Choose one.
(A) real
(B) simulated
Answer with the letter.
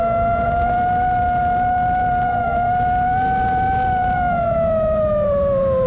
A